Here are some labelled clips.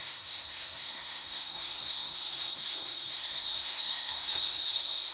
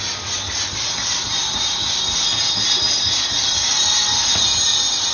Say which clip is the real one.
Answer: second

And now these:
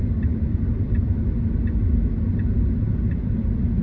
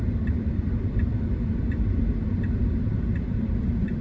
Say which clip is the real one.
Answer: first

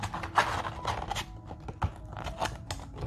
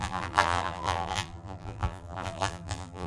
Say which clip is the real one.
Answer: first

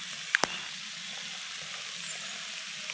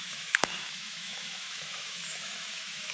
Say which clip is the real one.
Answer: first